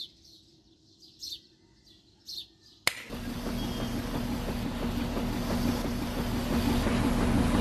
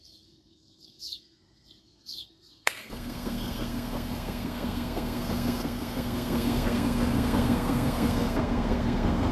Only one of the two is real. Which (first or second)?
first